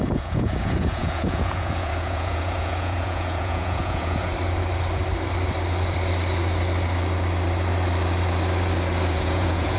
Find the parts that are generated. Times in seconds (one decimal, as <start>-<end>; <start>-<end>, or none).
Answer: 0.0-4.3; 9.1-9.8